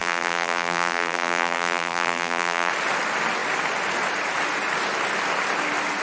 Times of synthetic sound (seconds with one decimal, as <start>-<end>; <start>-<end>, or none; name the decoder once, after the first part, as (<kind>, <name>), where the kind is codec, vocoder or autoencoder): 0.0-2.7 (vocoder, BigVGAN v2)